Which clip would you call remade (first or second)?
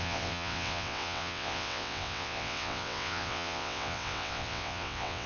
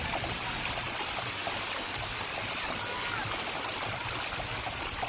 first